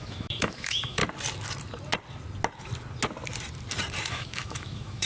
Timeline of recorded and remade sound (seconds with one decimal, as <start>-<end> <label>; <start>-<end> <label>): 0.0-1.0 remade; 1.0-4.1 recorded; 4.1-5.1 remade